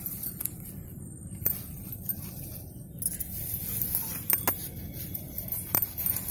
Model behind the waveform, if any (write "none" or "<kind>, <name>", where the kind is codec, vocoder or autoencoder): none